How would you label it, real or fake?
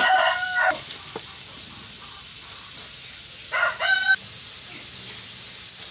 real